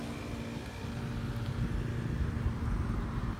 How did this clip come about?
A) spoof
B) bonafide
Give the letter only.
B